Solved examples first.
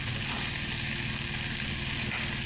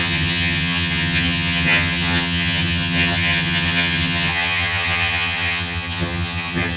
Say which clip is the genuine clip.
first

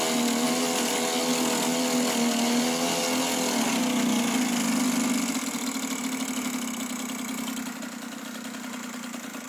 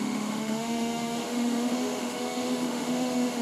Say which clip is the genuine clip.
first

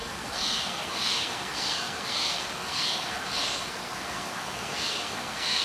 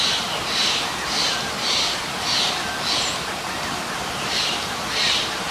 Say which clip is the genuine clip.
second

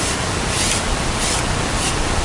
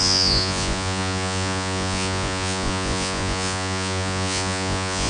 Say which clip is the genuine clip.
first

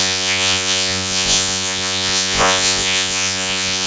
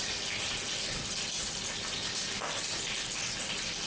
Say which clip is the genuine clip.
second